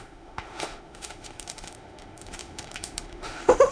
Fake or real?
fake